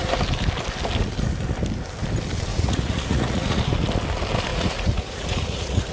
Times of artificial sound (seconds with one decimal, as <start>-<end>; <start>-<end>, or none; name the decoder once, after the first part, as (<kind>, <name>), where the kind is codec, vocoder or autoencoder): 2.5-3.6 (vocoder, Vocos); 4.5-5.9

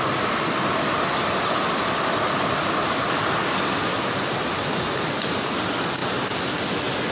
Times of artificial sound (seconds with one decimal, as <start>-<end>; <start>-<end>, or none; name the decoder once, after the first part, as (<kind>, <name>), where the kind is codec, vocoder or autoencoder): none